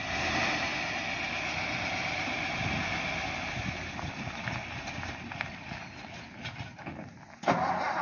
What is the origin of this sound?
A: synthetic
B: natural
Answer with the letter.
B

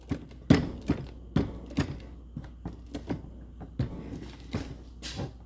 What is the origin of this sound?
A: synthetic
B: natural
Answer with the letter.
B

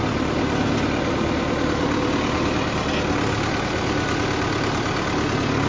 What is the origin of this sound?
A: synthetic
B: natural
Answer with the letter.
B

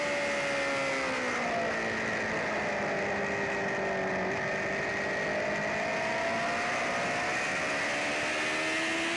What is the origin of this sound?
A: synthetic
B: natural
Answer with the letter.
B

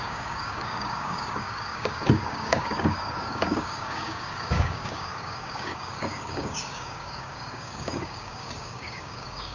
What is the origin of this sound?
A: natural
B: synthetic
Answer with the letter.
B